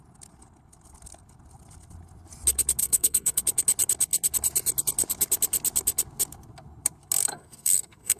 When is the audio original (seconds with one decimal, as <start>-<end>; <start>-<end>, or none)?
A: 0.0-2.8; 3.4-7.3